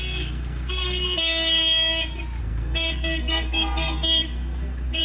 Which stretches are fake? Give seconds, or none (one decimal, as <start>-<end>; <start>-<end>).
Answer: 0.0-1.6; 2.4-5.0